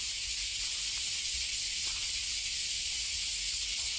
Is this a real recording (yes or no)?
yes